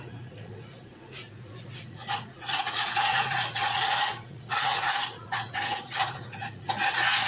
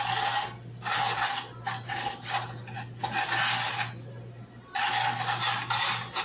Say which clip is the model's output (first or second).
first